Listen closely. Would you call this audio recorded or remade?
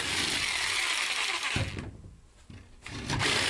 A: recorded